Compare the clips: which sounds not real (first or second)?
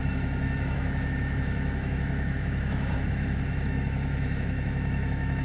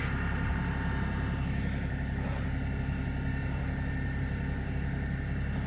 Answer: first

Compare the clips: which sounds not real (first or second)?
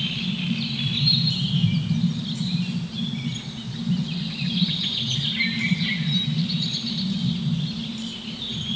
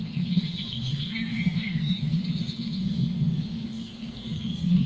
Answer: second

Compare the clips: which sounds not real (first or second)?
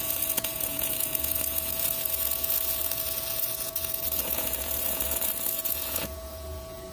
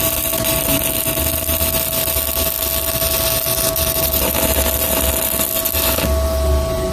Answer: first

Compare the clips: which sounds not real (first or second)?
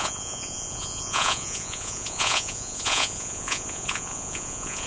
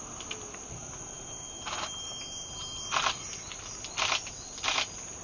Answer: first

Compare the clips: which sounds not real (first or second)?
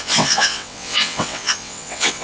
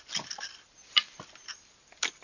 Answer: first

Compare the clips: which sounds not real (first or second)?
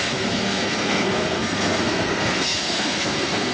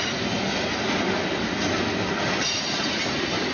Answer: first